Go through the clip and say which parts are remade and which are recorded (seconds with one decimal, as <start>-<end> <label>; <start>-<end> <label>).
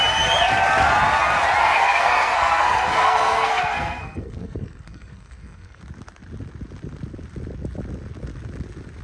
0.0-1.6 recorded; 1.6-5.8 remade; 5.8-9.0 recorded